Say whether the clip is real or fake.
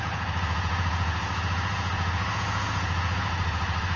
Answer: fake